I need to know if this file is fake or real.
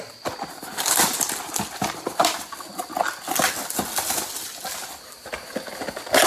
real